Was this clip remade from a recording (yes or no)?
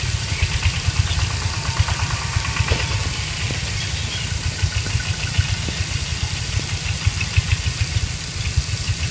no